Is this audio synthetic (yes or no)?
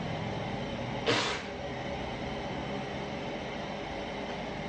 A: yes